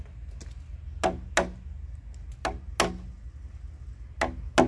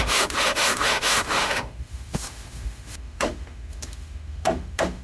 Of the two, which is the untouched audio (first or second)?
first